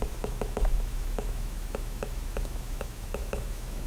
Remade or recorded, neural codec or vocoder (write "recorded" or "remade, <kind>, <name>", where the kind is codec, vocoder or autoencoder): remade, autoencoder, DAC-VAE